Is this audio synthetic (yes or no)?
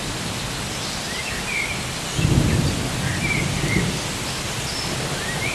no